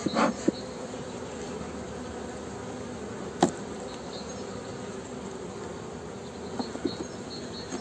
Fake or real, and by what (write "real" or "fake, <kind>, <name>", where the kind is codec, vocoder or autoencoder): real